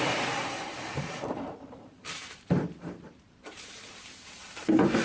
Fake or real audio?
fake